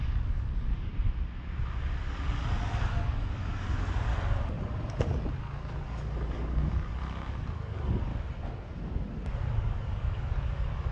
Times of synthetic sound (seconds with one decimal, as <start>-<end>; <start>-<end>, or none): 0.0-0.9; 2.0-2.4; 2.9-4.1; 5.4-8.1; 9.6-10.9